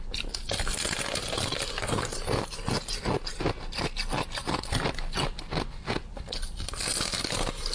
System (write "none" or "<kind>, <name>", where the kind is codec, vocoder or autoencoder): none